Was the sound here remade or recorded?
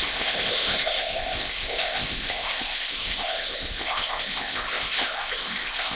remade